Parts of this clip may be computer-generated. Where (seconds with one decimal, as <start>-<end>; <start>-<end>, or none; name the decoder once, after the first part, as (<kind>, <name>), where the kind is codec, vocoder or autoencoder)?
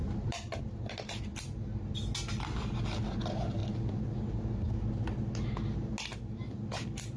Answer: 0.0-0.6 (vocoder, BigVGAN v2)